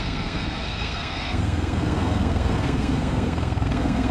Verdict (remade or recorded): remade